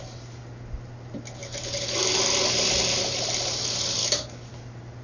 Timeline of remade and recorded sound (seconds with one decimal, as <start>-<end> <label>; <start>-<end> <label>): 0.0-4.0 recorded; 4.0-4.5 remade; 4.5-5.0 recorded